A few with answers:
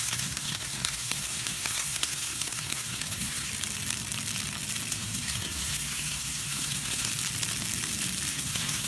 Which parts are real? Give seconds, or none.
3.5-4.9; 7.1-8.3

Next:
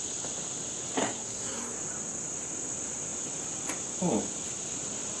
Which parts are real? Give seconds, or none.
0.0-1.0; 1.7-5.2

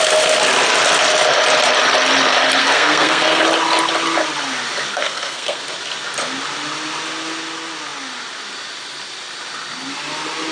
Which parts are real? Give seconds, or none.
0.0-2.6; 3.4-4.9; 5.6-10.5

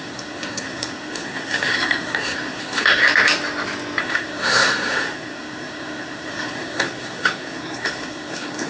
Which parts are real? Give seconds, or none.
3.0-4.0